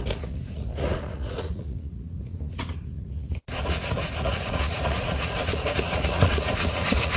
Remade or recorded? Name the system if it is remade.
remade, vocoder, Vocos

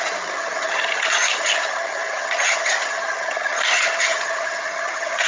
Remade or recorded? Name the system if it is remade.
remade, vocoder, HiFi-GAN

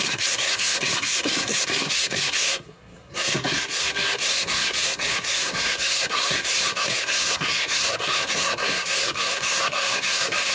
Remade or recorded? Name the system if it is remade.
remade, codec, SNAC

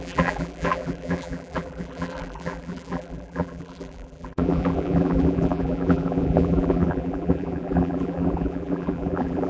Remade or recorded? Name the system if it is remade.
remade, vocoder, BigVGAN v2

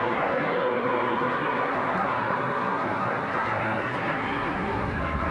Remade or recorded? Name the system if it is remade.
remade, codec, SNAC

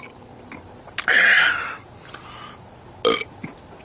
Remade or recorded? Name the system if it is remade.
recorded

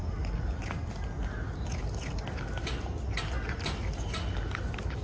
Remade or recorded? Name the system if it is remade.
recorded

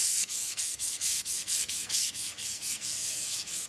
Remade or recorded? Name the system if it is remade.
remade, codec, SNAC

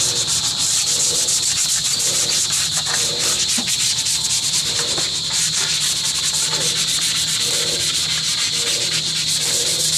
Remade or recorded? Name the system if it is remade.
recorded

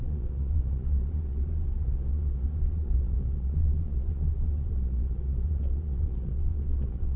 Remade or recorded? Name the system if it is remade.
remade, vocoder, Vocos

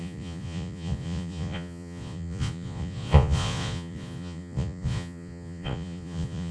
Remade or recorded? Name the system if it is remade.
remade, vocoder, Vocos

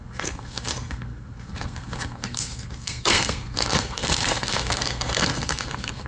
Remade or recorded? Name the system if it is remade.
remade, codec, SNAC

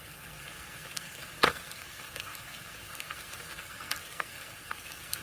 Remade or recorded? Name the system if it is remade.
remade, codec, SNAC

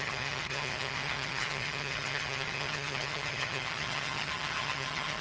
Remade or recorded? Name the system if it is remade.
remade, vocoder, HiFi-GAN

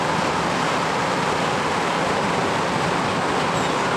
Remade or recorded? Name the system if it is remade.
recorded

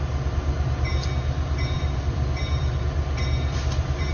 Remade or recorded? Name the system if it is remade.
remade, vocoder, BigVGAN v2